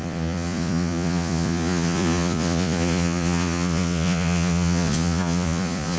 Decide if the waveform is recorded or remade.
remade